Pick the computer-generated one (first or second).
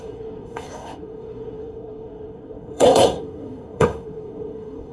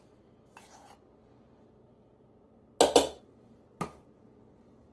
first